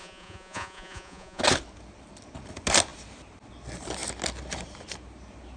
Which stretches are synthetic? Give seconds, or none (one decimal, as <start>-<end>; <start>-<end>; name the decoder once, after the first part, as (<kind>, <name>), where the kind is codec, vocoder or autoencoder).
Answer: 0.0-1.4 (vocoder, Vocos)